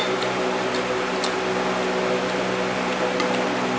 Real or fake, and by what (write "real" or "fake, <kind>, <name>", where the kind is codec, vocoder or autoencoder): real